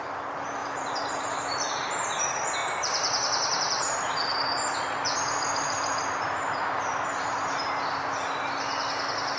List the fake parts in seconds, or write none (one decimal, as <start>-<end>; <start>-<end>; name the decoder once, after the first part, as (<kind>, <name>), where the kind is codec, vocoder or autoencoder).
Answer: 0.6-2.2 (vocoder, BigVGAN v2); 2.6-7.6